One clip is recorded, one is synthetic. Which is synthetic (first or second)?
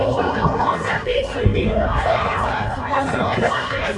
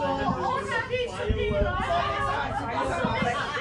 first